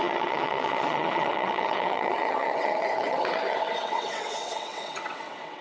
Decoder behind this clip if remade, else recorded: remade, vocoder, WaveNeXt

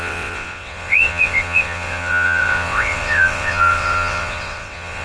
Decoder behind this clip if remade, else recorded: remade, vocoder, WaveNeXt